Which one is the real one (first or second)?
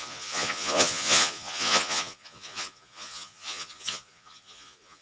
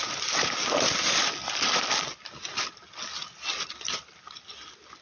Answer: second